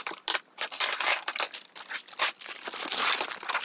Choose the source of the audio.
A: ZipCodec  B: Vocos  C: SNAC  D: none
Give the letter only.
D